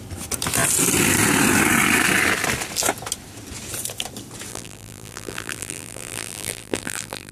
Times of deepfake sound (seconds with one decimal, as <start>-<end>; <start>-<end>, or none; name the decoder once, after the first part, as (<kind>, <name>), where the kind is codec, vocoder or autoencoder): 4.5-7.3 (vocoder, BigVGAN v2)